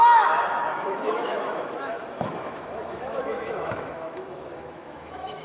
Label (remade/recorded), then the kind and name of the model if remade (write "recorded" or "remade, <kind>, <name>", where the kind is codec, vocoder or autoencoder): remade, autoencoder, DAC-VAE